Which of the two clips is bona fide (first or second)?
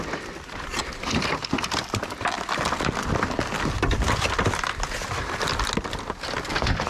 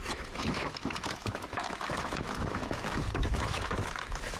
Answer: first